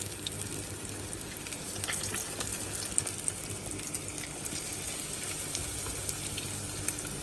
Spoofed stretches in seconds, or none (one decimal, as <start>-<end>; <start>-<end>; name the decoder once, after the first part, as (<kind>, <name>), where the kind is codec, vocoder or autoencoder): none